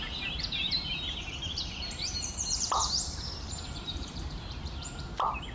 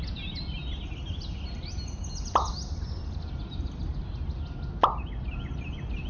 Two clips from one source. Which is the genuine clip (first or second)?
second